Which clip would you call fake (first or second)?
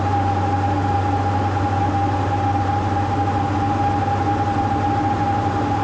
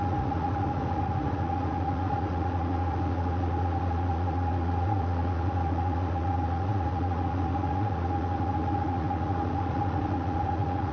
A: second